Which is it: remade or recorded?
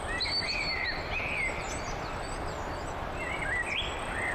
recorded